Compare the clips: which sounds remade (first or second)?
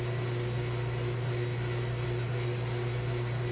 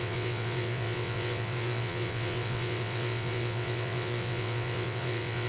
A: second